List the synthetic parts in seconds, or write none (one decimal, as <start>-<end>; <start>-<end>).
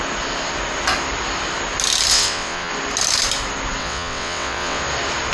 2.1-2.7; 3.8-4.8